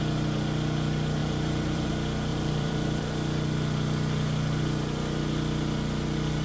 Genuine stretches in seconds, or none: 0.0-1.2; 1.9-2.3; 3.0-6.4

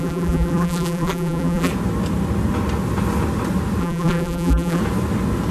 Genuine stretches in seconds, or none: 1.7-3.8; 4.8-5.5

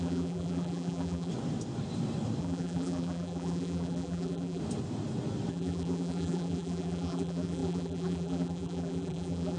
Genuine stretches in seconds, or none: 1.3-2.4; 4.6-5.5

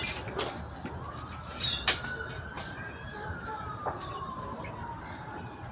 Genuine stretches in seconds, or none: 0.0-2.6